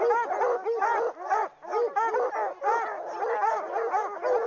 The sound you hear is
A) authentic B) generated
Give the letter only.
A